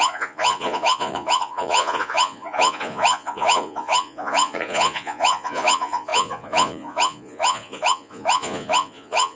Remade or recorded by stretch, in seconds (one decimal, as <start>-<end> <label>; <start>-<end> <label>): 0.0-9.4 remade